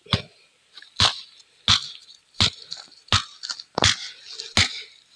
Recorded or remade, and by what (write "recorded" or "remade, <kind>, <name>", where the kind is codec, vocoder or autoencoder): recorded